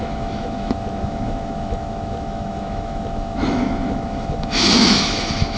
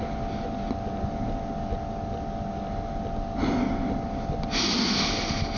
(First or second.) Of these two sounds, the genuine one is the second